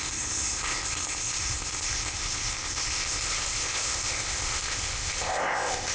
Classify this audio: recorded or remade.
remade